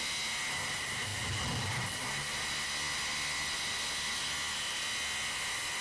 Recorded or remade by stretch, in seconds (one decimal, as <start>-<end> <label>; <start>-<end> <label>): 0.0-5.8 recorded